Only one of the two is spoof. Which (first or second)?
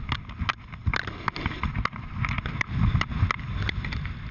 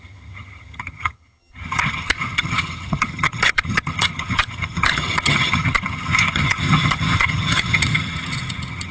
second